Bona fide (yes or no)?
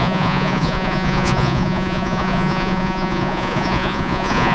no